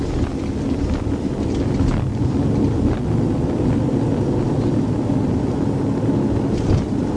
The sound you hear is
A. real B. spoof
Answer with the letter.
A